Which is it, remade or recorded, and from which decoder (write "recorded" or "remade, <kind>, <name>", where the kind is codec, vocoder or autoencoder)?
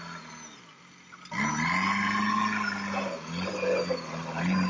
recorded